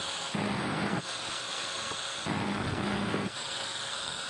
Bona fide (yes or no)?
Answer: no